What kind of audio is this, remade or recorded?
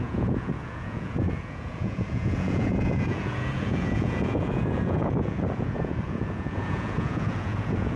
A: remade